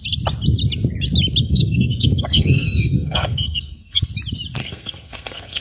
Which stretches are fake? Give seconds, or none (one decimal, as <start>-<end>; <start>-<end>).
1.4-4.1; 4.6-5.6